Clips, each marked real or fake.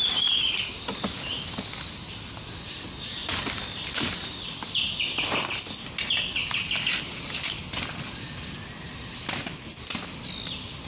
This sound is real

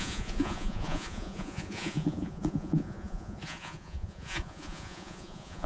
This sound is fake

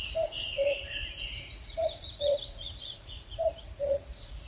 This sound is fake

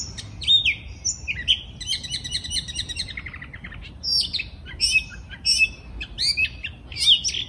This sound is real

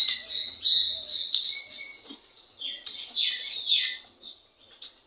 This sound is fake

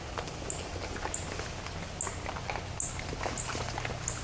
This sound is real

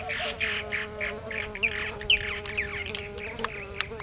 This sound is real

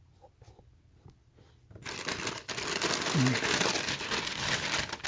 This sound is real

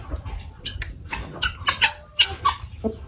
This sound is real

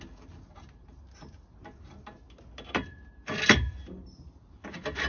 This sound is real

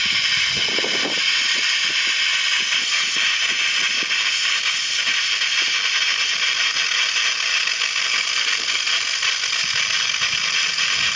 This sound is real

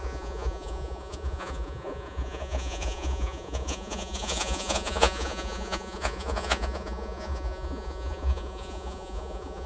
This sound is fake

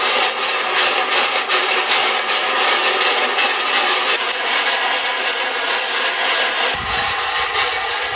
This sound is real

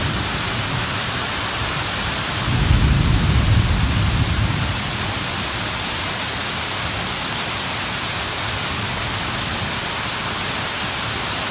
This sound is real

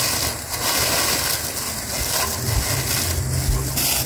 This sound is real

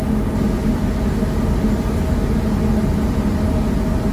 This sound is real